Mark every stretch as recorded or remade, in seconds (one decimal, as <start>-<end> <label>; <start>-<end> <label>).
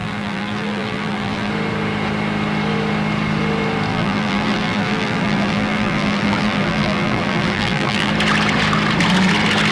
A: 0.0-1.5 remade; 1.5-3.9 recorded; 3.9-8.1 remade; 8.1-9.7 recorded